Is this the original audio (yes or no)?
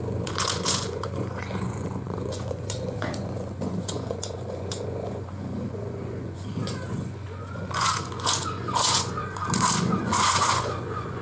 no